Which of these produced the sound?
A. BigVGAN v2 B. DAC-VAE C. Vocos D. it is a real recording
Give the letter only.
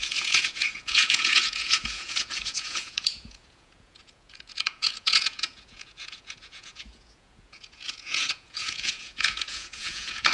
C